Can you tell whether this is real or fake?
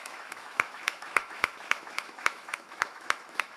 fake